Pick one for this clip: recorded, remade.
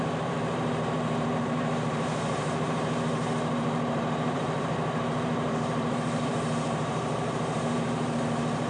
remade